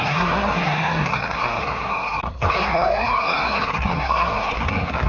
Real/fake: fake